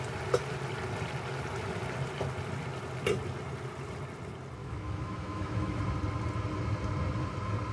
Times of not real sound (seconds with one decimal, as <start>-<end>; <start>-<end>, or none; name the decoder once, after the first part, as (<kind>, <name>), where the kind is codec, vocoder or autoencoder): 4.6-5.8 (autoencoder, DAC-VAE)